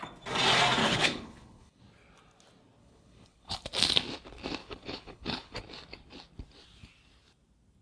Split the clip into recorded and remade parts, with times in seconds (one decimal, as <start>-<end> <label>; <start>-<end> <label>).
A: 0.0-0.8 recorded; 0.8-1.8 remade; 1.8-2.8 recorded; 2.8-3.6 remade; 3.6-4.6 recorded; 4.6-5.6 remade; 5.6-7.8 recorded